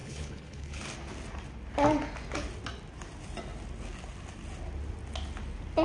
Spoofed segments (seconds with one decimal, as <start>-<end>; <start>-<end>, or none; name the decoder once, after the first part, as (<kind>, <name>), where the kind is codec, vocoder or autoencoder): 0.0-0.8 (codec, HILCodec)